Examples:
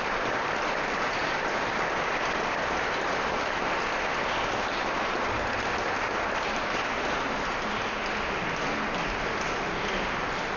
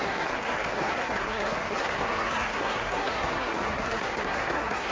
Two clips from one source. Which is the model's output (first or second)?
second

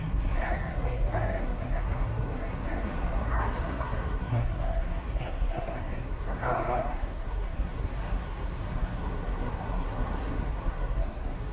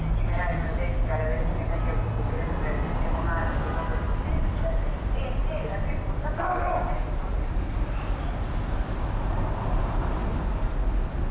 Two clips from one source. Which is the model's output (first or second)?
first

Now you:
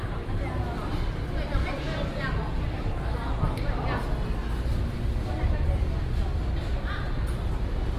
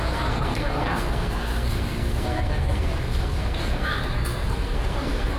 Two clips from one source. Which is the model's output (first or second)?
second